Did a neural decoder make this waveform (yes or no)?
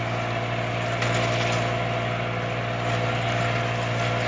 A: no